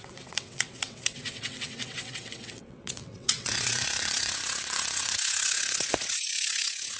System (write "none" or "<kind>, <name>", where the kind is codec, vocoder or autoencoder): vocoder, WaveNeXt